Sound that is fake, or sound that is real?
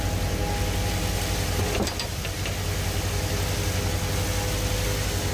real